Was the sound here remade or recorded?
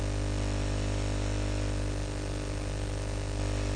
recorded